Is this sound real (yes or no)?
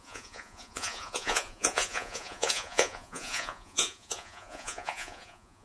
no